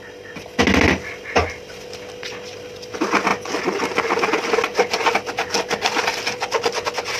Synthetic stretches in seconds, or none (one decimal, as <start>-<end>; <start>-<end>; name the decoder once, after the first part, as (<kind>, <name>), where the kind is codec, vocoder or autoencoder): none